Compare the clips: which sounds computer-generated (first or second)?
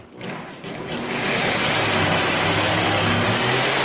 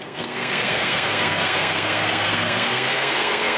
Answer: second